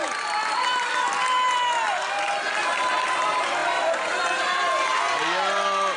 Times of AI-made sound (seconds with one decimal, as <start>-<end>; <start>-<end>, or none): none